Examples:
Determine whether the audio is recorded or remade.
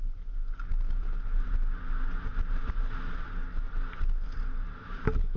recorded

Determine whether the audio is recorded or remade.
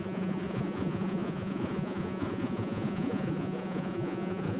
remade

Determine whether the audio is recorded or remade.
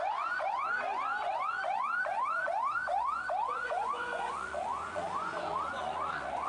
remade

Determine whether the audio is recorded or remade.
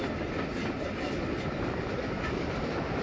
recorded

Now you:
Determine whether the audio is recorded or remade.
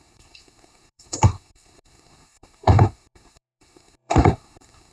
remade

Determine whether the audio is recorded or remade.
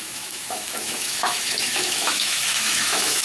remade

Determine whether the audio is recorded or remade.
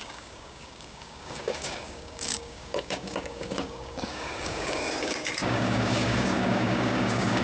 remade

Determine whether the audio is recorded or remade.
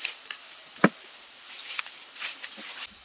recorded